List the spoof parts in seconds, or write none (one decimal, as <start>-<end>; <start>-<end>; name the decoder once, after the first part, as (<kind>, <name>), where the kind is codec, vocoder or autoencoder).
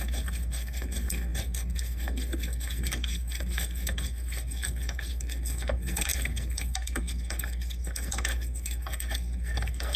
0.0-10.0 (codec, SNAC)